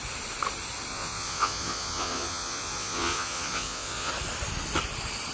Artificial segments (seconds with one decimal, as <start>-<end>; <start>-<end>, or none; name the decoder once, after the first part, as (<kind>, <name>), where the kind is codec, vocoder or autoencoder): 0.9-4.1 (vocoder, Vocos)